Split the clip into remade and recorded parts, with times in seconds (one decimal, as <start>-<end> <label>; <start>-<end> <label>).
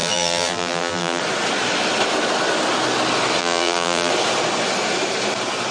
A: 0.0-1.2 remade; 1.2-3.4 recorded; 3.4-4.1 remade; 4.1-5.7 recorded